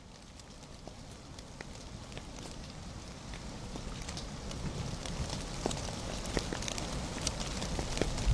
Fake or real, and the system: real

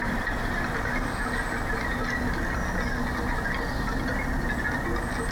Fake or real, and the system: real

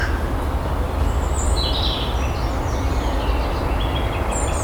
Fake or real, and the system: real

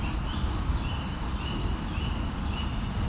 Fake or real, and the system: real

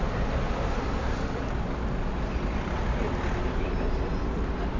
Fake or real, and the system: real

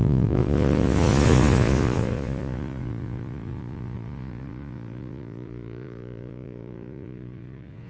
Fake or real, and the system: fake, vocoder, Vocos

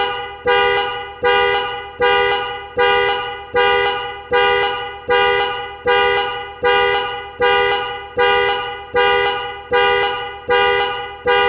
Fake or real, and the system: real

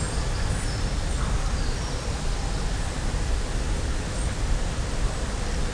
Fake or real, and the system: real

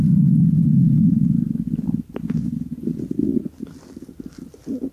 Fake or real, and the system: fake, vocoder, BigVGAN v2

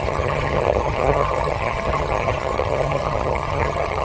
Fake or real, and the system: fake, vocoder, HiFi-GAN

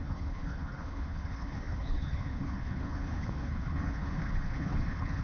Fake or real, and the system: fake, codec, HILCodec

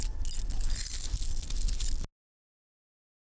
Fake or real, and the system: real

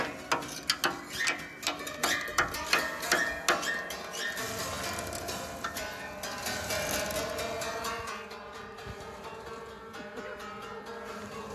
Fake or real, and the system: real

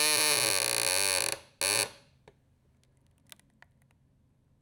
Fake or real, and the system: real